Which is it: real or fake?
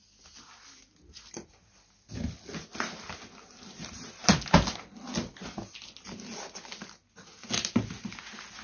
real